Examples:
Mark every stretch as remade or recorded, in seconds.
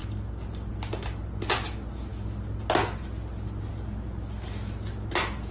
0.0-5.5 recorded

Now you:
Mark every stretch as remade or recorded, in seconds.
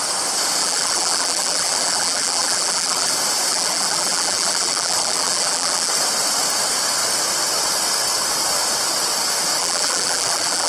0.0-0.6 recorded; 0.6-3.1 remade; 3.1-3.5 recorded; 3.5-5.9 remade; 5.9-9.6 recorded; 9.6-10.7 remade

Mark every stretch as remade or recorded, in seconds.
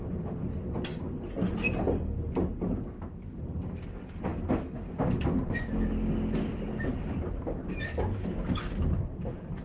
0.0-9.6 recorded